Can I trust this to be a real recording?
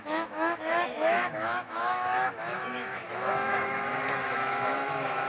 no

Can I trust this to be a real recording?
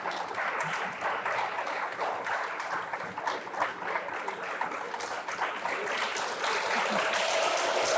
yes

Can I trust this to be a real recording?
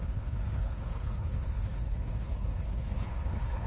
no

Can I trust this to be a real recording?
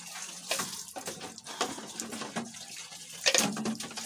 yes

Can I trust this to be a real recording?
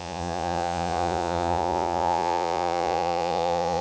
no